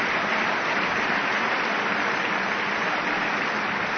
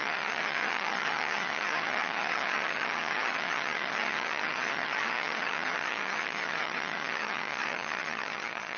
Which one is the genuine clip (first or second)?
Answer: first